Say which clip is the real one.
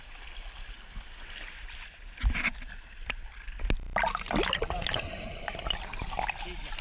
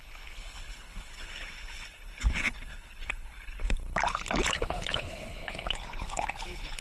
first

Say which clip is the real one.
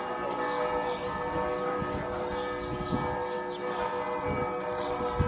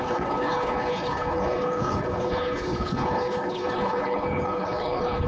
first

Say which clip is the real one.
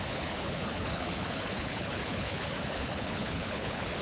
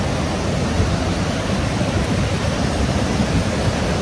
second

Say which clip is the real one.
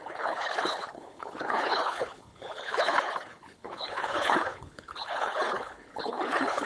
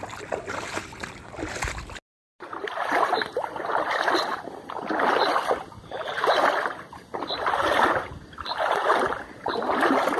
second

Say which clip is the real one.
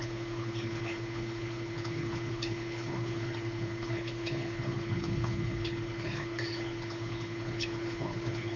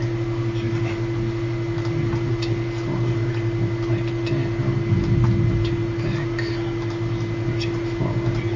second